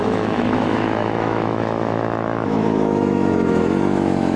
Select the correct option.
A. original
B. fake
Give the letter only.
B